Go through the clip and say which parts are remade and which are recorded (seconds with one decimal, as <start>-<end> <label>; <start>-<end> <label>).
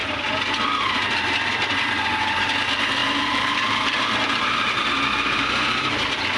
0.0-3.0 recorded; 3.0-4.0 remade; 4.0-4.8 recorded; 4.8-6.0 remade; 6.0-6.4 recorded